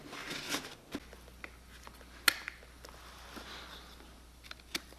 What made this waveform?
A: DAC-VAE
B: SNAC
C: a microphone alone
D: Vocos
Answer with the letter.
C